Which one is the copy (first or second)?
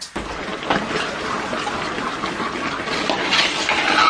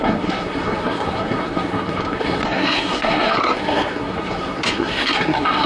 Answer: second